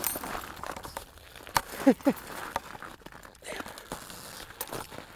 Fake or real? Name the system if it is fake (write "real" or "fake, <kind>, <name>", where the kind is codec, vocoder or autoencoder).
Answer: real